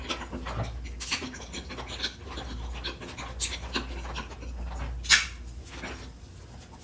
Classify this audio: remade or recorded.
recorded